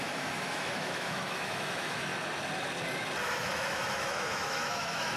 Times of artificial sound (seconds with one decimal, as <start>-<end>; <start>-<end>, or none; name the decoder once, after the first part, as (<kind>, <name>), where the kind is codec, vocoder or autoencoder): 0.0-2.1 (autoencoder, DAC-VAE); 3.2-5.2